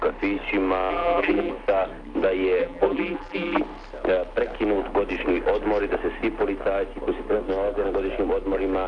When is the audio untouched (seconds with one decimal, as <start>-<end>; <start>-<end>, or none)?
0.0-0.9; 1.5-2.6; 3.6-8.9